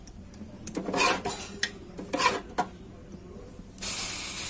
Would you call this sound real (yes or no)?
yes